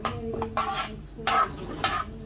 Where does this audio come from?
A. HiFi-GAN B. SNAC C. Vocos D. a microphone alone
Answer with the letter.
D